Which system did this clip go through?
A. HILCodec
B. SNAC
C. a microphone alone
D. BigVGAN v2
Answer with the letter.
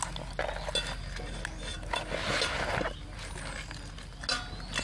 C